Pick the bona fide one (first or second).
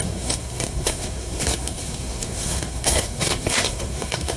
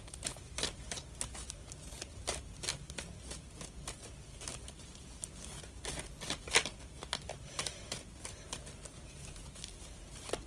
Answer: second